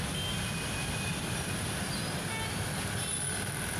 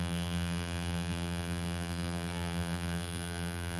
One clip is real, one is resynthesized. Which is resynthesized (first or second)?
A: second